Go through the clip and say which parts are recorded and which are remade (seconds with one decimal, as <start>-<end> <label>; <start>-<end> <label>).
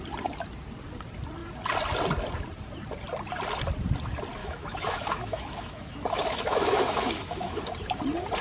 0.0-4.4 recorded; 4.4-7.6 remade; 7.6-8.4 recorded